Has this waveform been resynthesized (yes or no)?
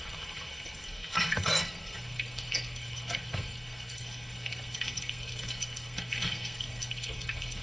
yes